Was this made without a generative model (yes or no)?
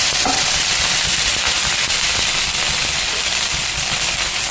yes